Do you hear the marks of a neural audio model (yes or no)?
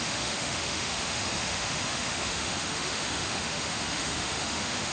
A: yes